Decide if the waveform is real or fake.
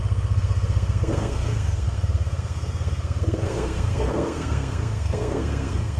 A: fake